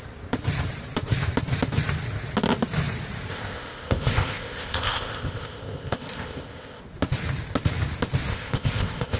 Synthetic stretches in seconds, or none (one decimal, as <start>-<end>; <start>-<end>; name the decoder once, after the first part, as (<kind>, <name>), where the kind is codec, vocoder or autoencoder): 3.3-6.8 (codec, ZipCodec); 8.3-9.2